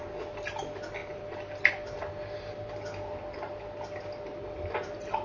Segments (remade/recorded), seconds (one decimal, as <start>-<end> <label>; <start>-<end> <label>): 0.0-5.2 recorded